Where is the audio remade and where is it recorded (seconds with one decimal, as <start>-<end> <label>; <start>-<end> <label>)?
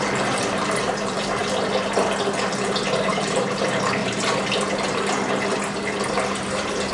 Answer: 0.0-1.4 remade; 1.4-3.1 recorded; 3.1-4.0 remade; 4.0-6.1 recorded; 6.1-6.9 remade